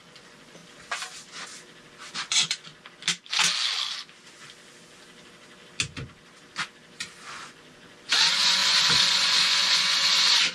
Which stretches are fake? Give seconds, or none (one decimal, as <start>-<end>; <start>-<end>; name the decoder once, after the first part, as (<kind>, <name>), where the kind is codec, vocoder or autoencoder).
0.0-0.6 (vocoder, Vocos); 2.1-2.7; 7.3-10.5